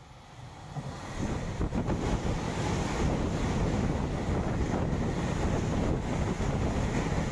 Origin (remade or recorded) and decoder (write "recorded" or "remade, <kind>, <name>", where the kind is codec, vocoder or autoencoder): recorded